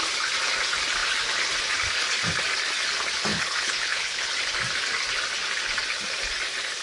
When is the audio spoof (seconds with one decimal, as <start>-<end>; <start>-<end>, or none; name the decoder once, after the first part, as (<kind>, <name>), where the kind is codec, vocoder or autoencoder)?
3.3-4.3 (codec, HILCodec)